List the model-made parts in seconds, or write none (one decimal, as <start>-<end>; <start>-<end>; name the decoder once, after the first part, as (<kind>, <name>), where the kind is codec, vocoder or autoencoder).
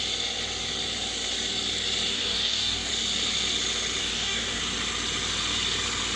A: 2.1-2.9 (codec, DAC); 4.0-4.6